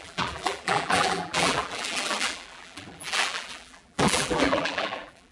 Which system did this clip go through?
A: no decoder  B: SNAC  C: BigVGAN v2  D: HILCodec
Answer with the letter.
C